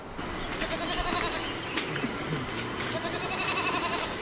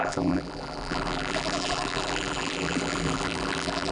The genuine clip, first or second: first